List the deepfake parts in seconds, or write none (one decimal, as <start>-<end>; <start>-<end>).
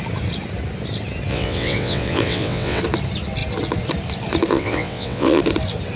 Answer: 1.3-2.8; 4.5-5.4